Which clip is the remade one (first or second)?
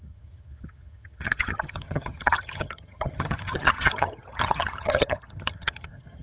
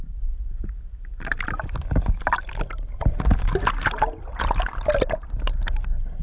first